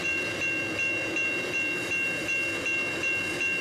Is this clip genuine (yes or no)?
yes